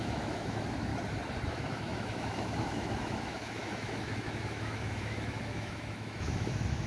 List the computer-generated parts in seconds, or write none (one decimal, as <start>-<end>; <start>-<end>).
0.0-0.9; 1.5-6.9

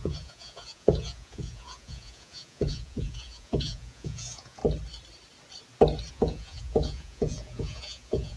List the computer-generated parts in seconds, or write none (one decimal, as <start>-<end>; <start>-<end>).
0.0-4.6; 6.1-8.4